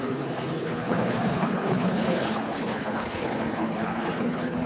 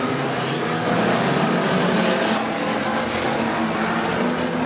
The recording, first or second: second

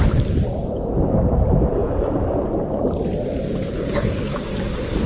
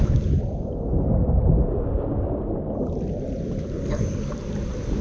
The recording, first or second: second